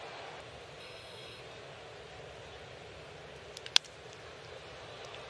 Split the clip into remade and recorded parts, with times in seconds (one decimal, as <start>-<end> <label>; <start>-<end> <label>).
0.0-0.8 recorded; 0.8-1.4 remade; 1.4-5.3 recorded